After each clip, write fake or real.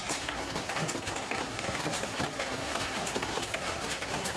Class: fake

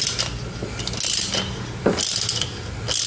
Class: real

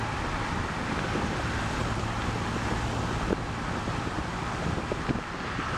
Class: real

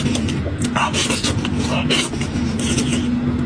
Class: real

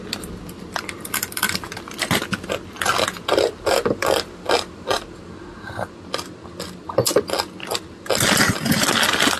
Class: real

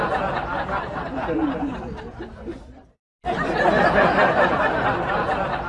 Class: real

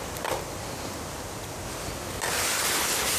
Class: real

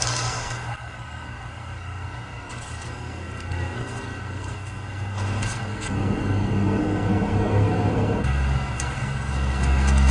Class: fake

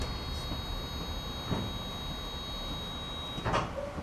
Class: real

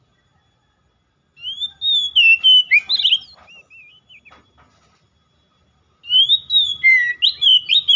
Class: real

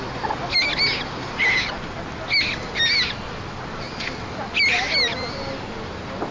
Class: real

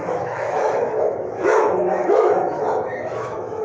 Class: fake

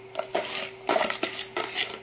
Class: real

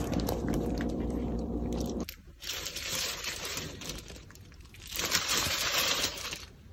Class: fake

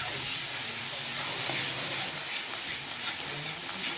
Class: real